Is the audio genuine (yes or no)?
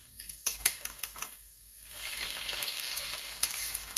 no